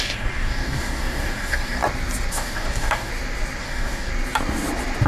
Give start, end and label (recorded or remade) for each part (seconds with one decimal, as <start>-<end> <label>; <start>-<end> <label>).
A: 0.0-1.8 remade; 1.8-2.3 recorded; 2.3-3.1 remade; 3.1-3.6 recorded; 3.6-4.1 remade; 4.1-5.1 recorded

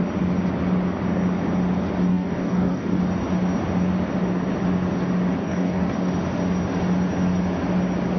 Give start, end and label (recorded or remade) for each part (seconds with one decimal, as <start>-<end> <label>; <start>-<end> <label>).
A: 0.0-2.1 recorded; 2.1-3.0 remade; 3.0-5.4 recorded; 5.4-6.1 remade; 6.1-8.2 recorded

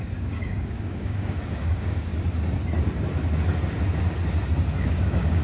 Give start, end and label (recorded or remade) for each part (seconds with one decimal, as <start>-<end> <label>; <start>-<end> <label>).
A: 0.0-2.1 remade; 2.1-4.8 recorded; 4.8-5.4 remade

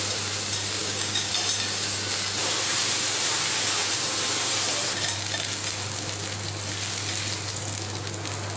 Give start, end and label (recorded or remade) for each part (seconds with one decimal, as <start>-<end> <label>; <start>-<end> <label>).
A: 0.0-0.8 recorded; 0.8-1.3 remade; 1.3-8.6 recorded

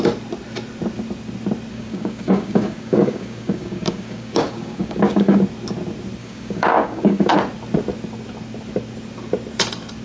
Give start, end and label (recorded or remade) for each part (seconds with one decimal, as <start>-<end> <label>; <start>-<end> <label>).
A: 0.0-1.7 recorded; 1.7-5.4 remade; 5.4-6.2 recorded; 6.2-7.4 remade; 7.4-10.0 recorded

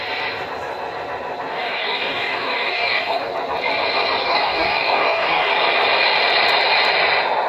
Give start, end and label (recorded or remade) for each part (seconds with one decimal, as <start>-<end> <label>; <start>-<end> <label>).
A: 0.0-1.5 recorded; 1.5-3.3 remade; 3.3-4.2 recorded; 4.2-5.5 remade; 5.5-7.5 recorded